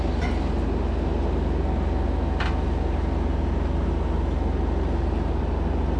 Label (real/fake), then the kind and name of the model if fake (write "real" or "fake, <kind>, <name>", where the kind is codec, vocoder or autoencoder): real